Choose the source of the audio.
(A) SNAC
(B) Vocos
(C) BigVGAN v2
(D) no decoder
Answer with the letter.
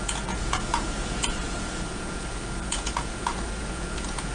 B